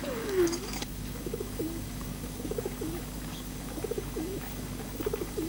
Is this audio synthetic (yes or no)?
yes